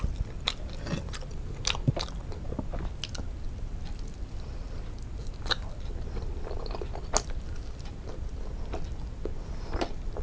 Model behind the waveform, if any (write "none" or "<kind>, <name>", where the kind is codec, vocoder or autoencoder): none